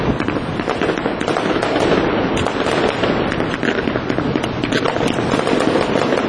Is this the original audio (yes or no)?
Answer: yes